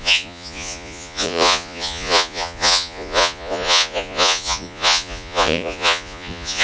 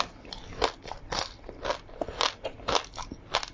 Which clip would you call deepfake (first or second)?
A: first